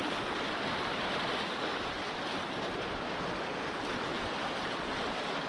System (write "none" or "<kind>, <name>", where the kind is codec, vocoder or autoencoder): none